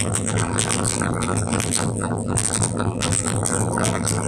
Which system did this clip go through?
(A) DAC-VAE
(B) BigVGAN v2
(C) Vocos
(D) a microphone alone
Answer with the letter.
B